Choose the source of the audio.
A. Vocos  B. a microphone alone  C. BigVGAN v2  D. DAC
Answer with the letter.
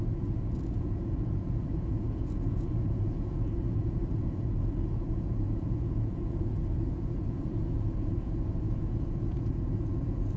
A